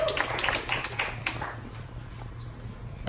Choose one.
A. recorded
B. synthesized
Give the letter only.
A